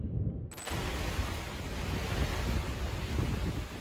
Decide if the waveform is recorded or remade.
recorded